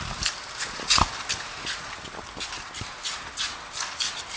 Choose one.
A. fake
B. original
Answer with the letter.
B